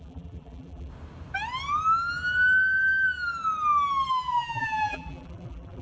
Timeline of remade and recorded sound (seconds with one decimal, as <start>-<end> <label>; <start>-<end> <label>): 0.0-0.9 remade; 0.9-4.1 recorded; 4.1-5.8 remade